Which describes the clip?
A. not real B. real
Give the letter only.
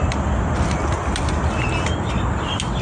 B